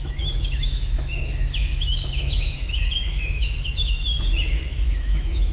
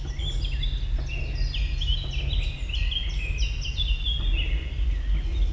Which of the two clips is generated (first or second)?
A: first